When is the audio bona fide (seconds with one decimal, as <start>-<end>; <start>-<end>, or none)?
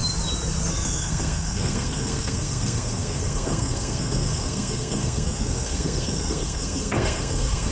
0.0-0.7